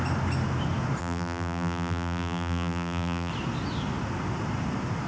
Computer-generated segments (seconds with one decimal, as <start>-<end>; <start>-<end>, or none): 1.0-3.3